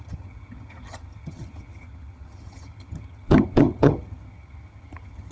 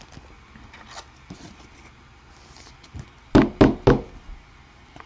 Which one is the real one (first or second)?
second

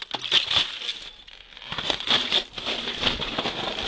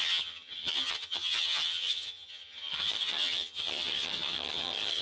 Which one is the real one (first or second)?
first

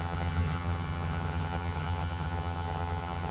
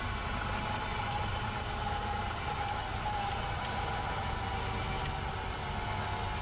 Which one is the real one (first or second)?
second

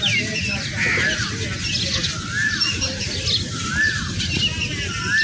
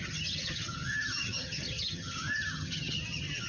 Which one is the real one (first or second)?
first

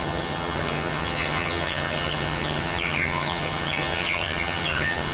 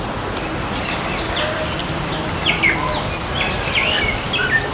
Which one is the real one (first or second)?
second